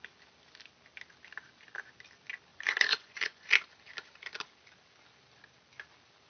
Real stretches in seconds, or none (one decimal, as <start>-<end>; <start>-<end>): 0.0-2.5; 3.5-6.3